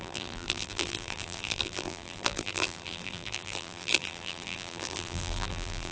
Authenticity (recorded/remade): remade